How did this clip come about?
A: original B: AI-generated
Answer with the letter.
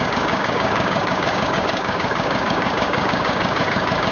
B